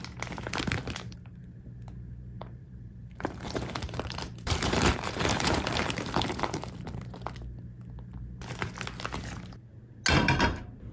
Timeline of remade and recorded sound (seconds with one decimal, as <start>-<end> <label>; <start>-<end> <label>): 0.0-0.8 recorded; 0.8-1.4 remade; 1.4-2.4 recorded; 2.4-7.0 remade; 7.0-10.9 recorded